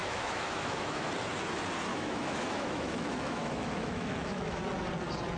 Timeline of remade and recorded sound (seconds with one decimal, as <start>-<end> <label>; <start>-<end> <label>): 0.0-1.1 remade; 1.1-1.9 recorded; 1.9-4.6 remade; 4.6-5.4 recorded